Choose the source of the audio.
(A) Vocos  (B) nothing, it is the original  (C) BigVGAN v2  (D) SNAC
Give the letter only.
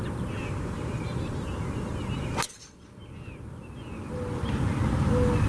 B